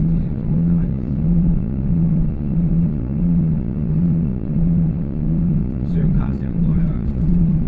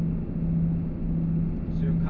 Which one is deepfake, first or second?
first